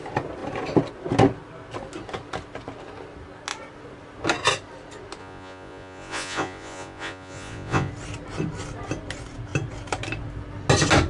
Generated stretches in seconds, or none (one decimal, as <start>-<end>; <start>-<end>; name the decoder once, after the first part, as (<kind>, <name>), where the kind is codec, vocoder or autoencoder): 5.2-7.9 (vocoder, Vocos)